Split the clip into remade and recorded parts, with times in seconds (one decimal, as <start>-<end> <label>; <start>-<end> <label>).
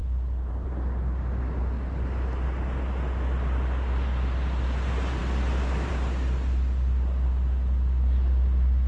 0.0-8.9 recorded